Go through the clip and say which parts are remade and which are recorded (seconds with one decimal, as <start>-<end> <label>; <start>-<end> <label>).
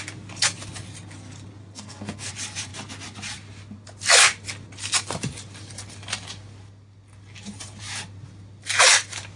0.0-1.6 recorded; 1.6-2.3 remade; 2.3-9.4 recorded